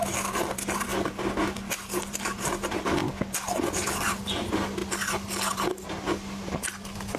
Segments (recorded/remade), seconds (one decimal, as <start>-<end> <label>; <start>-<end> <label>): 0.0-7.2 recorded